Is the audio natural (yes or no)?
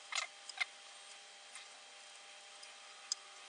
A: yes